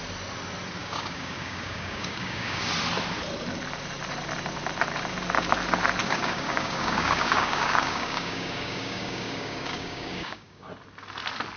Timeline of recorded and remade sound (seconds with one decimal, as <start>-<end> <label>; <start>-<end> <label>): 0.0-0.8 recorded; 0.8-2.7 remade; 2.7-6.0 recorded; 6.0-10.7 remade; 10.7-11.6 recorded